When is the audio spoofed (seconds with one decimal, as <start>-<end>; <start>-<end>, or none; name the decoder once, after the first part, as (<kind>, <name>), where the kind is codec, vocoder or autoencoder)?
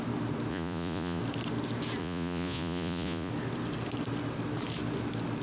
0.5-1.2 (vocoder, Vocos); 2.0-3.3